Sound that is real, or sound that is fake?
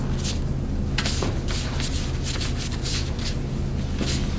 real